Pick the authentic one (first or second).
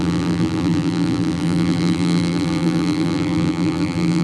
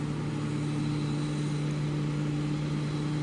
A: second